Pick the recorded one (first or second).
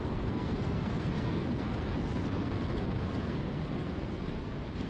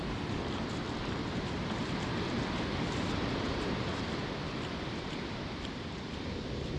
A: second